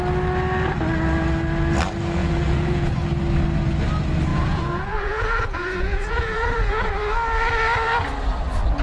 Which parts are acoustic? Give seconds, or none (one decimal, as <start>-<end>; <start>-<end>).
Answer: 0.0-2.2; 2.9-4.3; 6.9-8.8